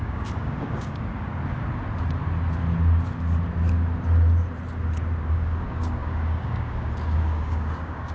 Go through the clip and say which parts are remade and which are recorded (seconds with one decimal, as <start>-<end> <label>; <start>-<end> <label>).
0.0-1.1 remade; 1.1-5.3 recorded; 5.3-8.1 remade